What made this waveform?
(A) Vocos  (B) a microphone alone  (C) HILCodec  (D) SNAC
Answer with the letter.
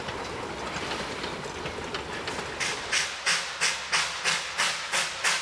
B